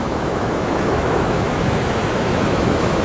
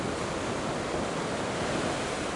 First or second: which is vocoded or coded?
first